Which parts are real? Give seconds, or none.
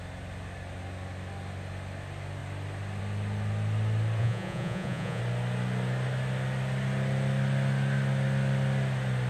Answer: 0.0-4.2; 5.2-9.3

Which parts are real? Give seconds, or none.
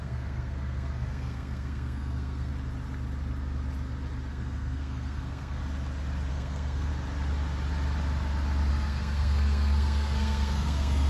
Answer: 2.5-4.3; 5.6-6.3; 6.9-8.7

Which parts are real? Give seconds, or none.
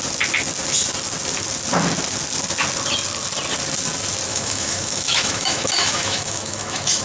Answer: 0.0-4.3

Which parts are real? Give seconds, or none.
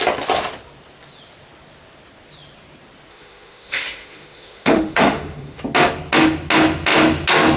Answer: 0.0-3.1; 5.6-7.6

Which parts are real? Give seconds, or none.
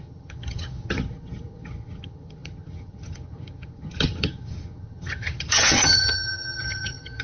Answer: none